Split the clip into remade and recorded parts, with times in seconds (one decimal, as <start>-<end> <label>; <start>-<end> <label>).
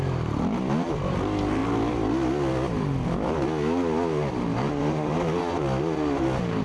0.0-6.6 recorded